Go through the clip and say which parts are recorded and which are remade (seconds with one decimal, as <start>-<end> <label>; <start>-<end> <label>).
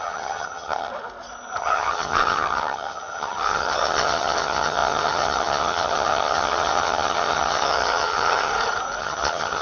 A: 0.0-0.9 remade; 0.9-1.6 recorded; 1.6-8.5 remade; 8.5-9.0 recorded; 9.0-9.6 remade